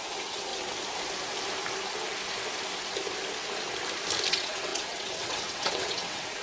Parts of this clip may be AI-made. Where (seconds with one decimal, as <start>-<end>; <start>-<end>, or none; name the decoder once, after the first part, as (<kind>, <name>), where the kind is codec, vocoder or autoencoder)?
0.0-0.5 (vocoder, WaveNeXt); 4.3-6.4

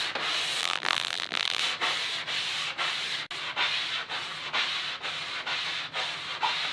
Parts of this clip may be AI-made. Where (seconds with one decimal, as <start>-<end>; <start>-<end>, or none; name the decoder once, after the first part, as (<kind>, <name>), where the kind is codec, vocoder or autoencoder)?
0.6-1.6 (vocoder, BigVGAN v2)